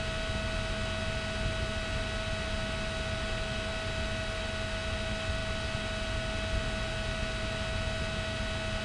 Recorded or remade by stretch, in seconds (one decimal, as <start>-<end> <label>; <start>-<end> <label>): 0.0-8.8 recorded